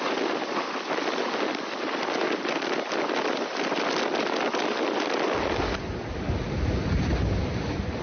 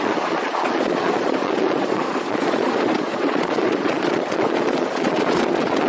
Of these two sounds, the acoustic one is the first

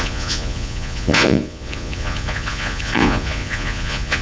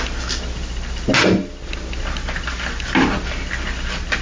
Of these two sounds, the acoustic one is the second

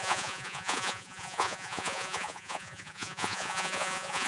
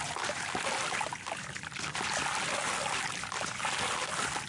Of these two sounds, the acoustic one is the second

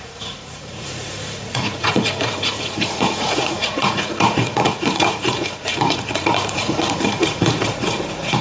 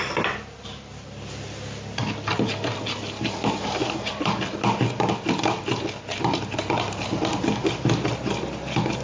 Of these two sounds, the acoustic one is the second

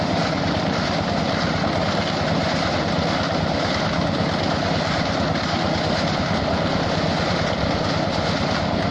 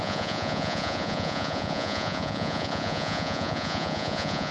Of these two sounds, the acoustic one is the first